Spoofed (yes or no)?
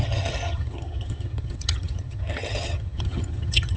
yes